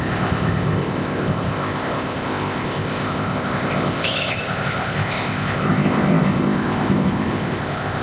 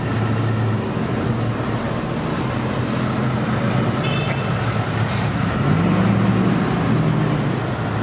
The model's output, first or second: first